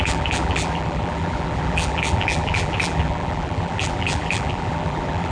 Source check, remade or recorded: remade